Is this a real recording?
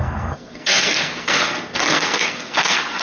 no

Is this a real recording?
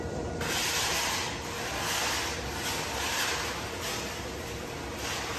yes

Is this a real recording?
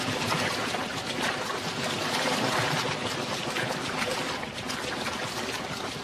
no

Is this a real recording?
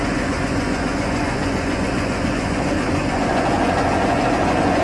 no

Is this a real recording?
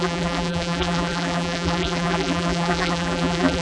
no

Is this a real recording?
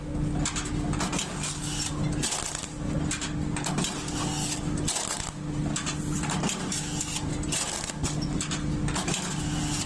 yes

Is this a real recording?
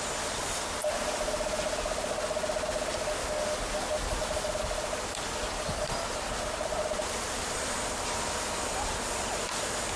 yes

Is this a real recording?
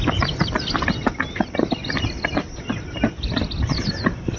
yes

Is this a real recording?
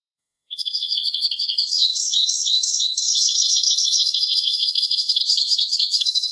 no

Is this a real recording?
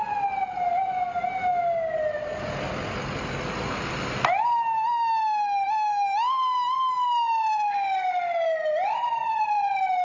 yes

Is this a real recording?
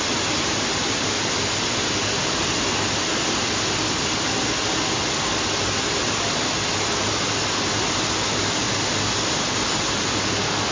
yes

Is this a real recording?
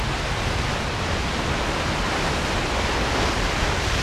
yes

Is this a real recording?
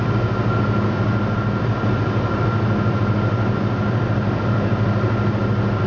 yes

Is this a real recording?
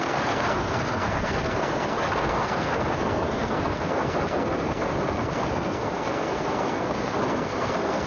no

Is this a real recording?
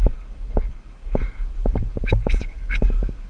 no